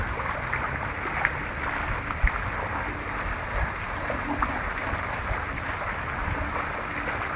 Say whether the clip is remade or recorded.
recorded